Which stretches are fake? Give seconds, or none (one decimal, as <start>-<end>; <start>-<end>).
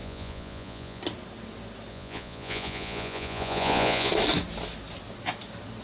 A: 0.0-1.0; 1.9-4.1